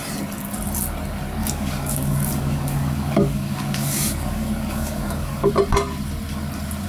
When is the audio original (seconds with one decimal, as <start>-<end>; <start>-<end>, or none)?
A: 0.0-1.4; 5.5-6.9